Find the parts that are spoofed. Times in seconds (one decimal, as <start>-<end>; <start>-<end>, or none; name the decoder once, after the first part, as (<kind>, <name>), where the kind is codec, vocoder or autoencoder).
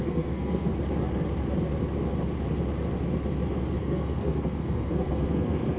0.0-0.7 (codec, SNAC); 3.8-5.8